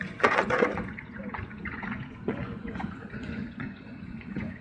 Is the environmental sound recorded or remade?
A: remade